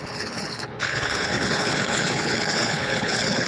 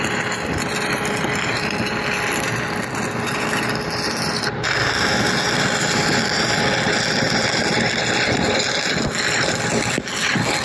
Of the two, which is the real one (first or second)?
second